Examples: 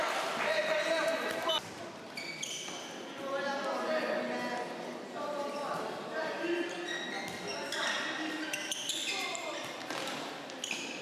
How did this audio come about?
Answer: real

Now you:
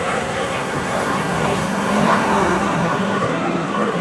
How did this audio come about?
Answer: fake